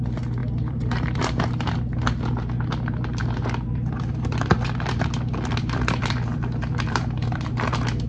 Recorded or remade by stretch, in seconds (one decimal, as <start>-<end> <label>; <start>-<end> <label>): 0.0-0.4 recorded; 0.4-1.2 remade; 1.2-3.2 recorded; 3.2-7.5 remade; 7.5-8.1 recorded